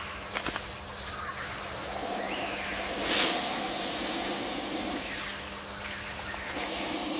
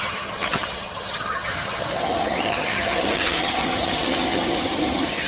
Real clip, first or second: first